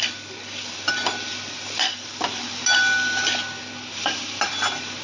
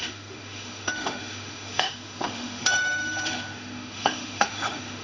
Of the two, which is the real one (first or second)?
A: first